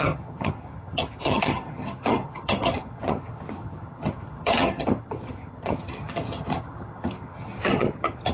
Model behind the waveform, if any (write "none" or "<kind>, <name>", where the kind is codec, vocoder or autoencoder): vocoder, HiFi-GAN